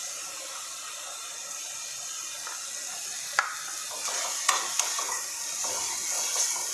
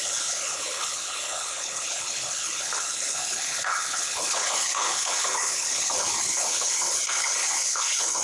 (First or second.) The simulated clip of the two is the second